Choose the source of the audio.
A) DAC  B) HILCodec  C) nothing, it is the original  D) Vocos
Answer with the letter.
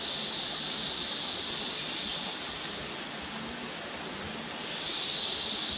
C